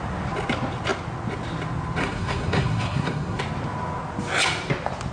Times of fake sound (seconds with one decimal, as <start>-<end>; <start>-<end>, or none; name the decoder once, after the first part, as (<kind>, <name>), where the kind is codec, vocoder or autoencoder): 2.0-3.4 (codec, SNAC)